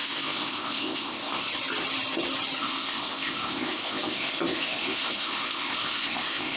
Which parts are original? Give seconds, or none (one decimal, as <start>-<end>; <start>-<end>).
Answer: 1.5-2.6